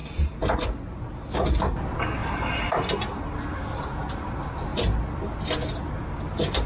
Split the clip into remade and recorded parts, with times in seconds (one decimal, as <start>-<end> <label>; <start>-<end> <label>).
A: 0.0-2.2 recorded; 2.2-4.3 remade; 4.3-6.7 recorded